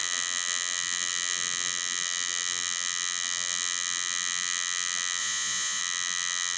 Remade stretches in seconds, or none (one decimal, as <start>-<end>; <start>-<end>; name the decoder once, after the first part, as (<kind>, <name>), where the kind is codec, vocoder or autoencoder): 5.2-5.8 (vocoder, Vocos)